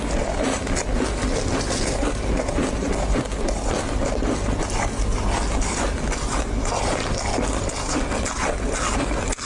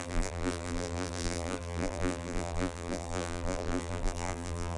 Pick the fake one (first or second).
second